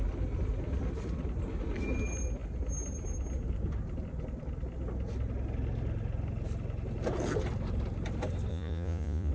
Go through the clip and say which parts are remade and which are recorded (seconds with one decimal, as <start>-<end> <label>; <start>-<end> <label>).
0.0-8.5 recorded; 8.5-9.3 remade